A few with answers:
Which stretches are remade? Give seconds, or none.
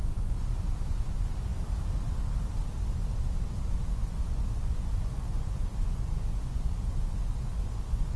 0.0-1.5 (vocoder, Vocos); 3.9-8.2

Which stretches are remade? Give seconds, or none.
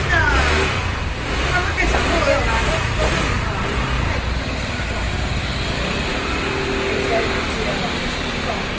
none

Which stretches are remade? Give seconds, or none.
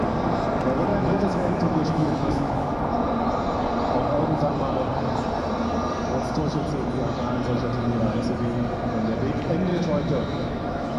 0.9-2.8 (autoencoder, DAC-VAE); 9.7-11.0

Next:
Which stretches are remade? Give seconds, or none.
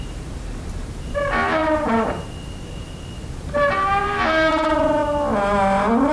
0.0-5.0 (vocoder, BigVGAN v2)